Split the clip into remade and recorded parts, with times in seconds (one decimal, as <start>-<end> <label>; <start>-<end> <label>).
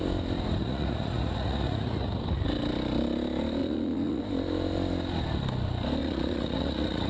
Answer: 0.0-0.6 recorded; 0.6-2.2 remade; 2.2-3.6 recorded; 3.6-4.2 remade; 4.2-6.0 recorded; 6.0-7.1 remade